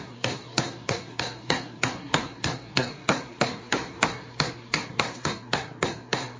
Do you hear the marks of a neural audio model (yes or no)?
yes